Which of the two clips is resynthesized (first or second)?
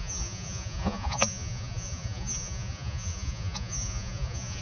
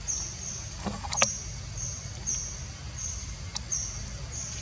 first